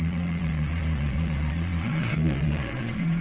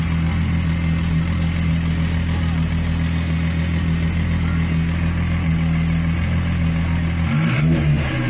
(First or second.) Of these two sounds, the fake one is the first